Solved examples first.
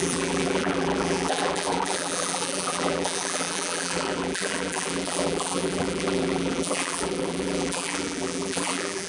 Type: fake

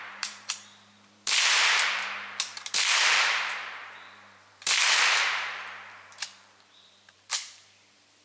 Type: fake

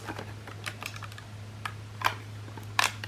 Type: real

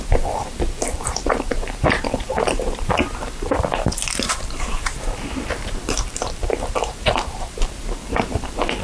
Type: fake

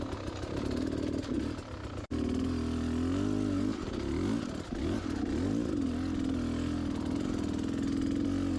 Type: real